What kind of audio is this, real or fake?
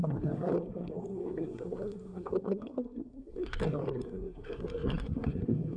fake